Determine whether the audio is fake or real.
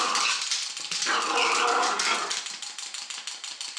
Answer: real